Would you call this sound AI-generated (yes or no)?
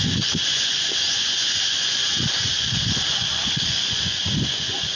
yes